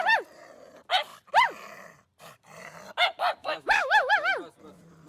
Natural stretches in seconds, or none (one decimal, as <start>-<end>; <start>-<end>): 0.0-3.4; 4.1-5.1